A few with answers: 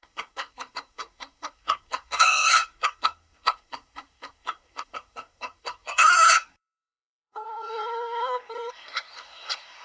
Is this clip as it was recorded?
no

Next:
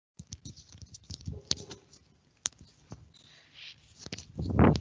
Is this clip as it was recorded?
yes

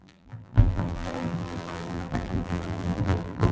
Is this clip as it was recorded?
no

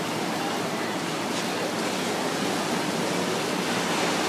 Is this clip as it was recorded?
yes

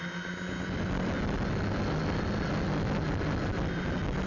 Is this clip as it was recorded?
yes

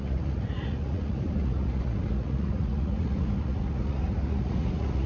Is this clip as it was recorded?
no